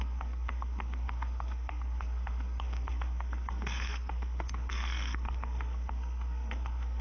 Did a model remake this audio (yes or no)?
yes